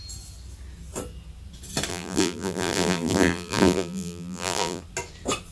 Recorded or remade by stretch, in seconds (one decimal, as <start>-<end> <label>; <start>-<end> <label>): 0.0-1.9 recorded; 1.9-4.8 remade; 4.8-5.5 recorded